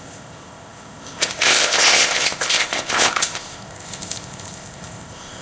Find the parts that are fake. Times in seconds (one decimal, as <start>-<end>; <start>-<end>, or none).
0.0-5.4